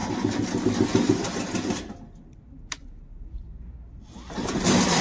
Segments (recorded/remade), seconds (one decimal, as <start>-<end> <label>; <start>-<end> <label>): 0.0-5.0 recorded